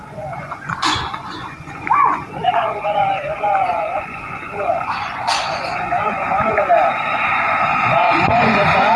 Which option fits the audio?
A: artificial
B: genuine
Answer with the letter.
A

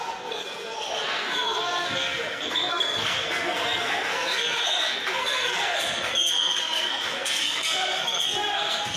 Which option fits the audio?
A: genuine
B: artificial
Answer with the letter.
B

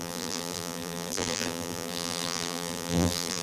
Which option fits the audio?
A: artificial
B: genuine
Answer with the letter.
A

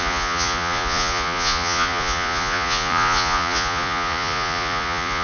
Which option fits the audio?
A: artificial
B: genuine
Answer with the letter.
A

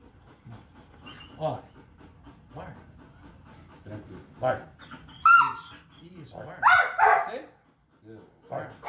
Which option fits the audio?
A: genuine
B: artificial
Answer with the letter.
A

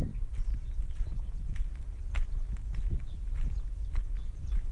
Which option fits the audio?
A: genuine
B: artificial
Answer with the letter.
A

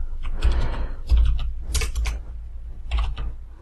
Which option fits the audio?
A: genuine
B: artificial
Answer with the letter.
A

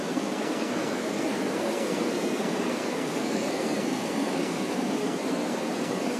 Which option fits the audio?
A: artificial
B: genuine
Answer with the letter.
A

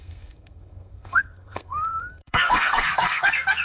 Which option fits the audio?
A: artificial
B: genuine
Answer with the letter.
A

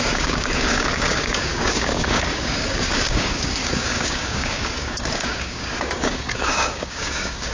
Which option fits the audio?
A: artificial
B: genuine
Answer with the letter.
A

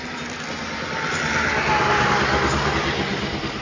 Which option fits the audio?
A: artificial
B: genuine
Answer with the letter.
B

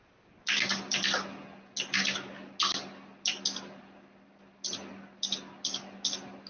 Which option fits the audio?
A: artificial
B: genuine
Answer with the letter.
B